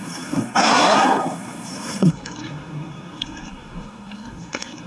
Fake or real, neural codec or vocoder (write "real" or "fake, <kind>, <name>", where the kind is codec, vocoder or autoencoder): fake, codec, SNAC